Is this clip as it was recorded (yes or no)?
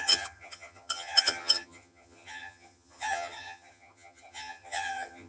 no